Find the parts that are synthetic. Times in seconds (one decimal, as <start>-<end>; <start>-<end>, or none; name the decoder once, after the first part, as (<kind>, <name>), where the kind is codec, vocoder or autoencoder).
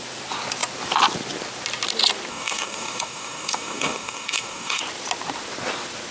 2.3-4.8 (codec, DAC)